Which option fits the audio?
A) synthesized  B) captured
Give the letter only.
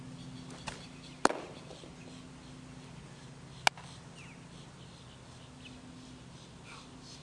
B